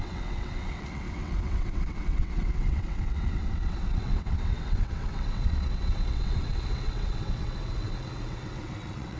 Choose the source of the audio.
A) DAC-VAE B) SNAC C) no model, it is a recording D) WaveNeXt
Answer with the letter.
D